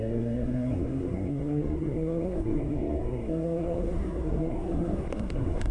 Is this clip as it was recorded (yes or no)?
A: no